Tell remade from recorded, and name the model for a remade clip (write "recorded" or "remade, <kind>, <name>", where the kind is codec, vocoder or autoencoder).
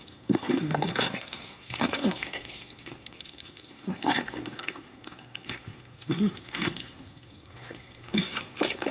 remade, codec, SNAC